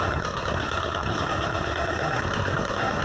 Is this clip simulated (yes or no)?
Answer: yes